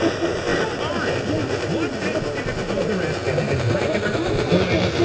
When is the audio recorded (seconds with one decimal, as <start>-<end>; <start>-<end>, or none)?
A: 0.0-5.0